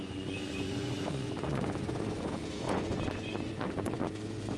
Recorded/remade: remade